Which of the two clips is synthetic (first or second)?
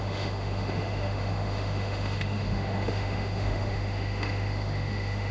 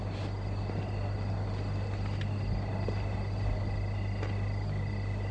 first